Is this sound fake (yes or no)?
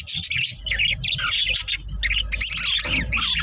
no